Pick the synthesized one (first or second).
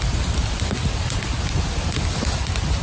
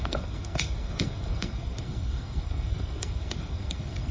second